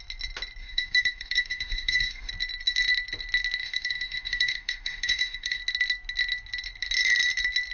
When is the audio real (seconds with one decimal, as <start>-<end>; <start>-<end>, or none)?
0.0-0.6; 2.3-3.6; 5.6-7.7

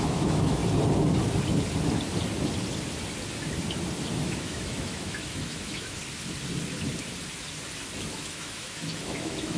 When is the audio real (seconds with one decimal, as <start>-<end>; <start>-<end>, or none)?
0.6-4.2; 6.0-8.1

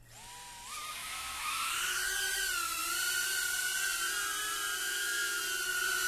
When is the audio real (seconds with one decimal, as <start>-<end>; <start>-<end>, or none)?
0.0-1.0; 1.7-4.8; 5.4-6.1

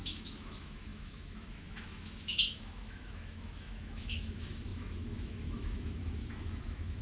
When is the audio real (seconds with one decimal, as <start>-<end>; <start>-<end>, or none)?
none

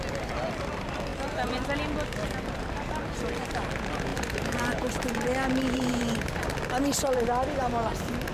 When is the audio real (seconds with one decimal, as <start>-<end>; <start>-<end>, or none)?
0.0-8.3

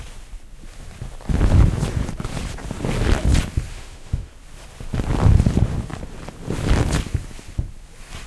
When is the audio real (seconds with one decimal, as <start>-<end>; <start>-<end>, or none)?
0.0-3.7; 4.3-8.3

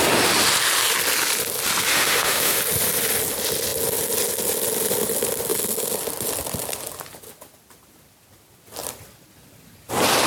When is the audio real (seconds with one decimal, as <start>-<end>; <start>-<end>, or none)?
0.0-1.9; 2.6-10.3